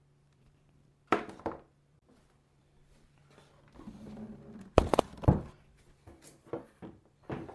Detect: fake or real fake